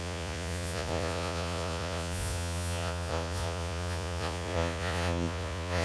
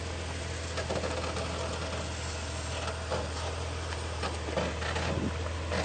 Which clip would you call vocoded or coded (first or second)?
first